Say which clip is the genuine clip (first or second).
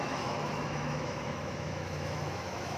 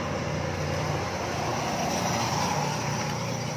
second